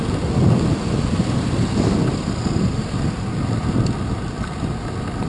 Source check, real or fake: real